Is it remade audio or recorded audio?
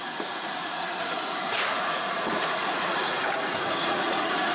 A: remade